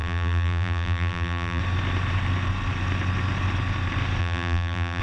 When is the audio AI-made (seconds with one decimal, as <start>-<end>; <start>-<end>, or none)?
0.0-1.6; 4.2-5.0